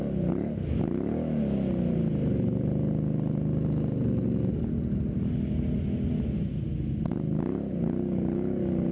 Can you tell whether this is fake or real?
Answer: real